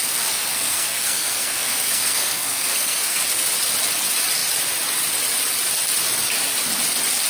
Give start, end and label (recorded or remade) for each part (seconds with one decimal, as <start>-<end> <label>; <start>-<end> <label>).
0.0-3.2 remade; 3.2-7.3 recorded